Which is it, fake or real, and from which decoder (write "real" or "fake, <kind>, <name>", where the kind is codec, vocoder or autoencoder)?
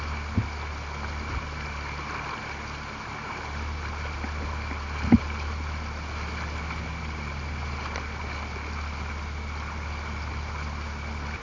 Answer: real